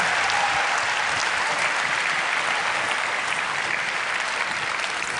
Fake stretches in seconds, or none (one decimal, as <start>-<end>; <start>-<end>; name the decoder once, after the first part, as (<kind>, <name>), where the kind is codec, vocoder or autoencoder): none